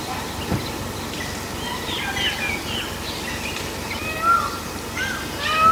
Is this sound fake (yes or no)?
no